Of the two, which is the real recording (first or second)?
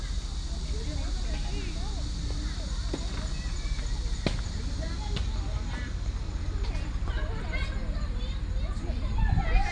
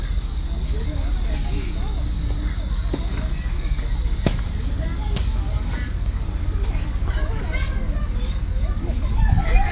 first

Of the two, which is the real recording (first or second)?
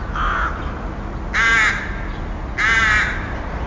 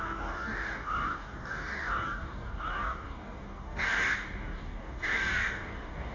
first